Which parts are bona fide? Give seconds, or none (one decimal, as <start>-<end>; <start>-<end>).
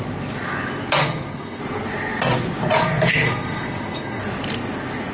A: 0.0-1.0; 1.6-2.8; 4.2-5.1